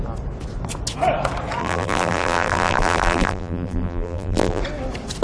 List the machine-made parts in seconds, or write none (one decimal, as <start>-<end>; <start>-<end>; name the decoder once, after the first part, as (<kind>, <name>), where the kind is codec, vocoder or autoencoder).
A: 1.6-4.6 (vocoder, BigVGAN v2)